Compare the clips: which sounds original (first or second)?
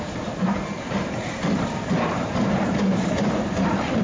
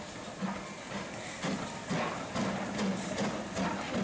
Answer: second